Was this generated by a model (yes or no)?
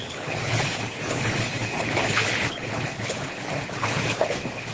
yes